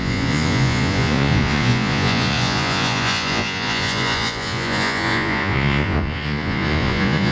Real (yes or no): no